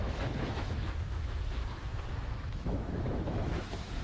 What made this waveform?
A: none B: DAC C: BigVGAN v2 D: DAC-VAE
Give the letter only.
D